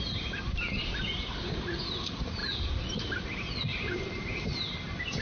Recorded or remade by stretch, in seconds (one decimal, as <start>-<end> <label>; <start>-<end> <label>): 0.0-2.4 recorded; 2.4-3.0 remade; 3.0-3.7 recorded; 3.7-4.8 remade; 4.8-5.2 recorded